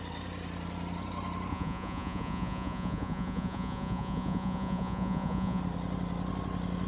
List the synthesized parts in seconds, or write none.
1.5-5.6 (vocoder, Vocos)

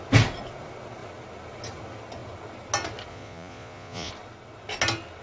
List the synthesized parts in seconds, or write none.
3.1-4.1 (vocoder, Vocos)